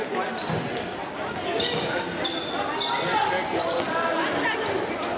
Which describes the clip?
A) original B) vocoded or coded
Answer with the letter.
A